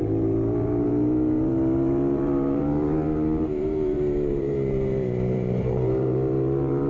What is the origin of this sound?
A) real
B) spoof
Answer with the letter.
B